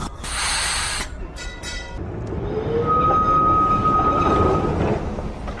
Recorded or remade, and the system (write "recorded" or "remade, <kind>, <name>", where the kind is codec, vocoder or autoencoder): recorded